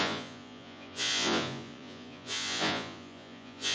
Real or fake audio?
fake